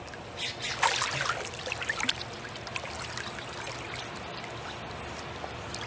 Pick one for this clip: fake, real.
real